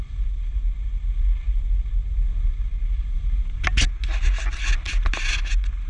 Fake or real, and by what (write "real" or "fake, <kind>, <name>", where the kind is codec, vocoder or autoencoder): real